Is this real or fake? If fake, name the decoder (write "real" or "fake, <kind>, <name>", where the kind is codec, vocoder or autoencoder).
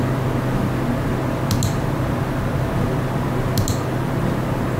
real